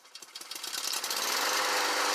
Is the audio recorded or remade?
recorded